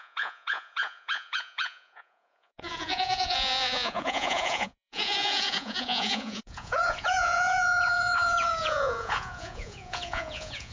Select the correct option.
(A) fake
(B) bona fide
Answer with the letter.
A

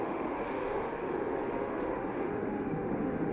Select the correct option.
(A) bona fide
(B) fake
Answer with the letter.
B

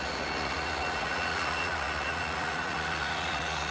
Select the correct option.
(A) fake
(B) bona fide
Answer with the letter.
A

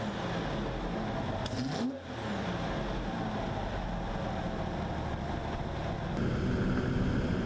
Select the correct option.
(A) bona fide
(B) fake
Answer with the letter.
A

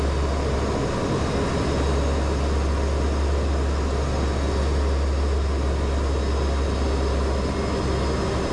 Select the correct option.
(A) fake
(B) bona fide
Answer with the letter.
B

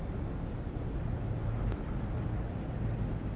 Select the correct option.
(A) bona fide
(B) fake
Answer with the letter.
A